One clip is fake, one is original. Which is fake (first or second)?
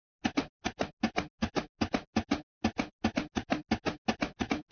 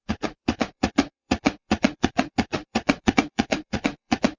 second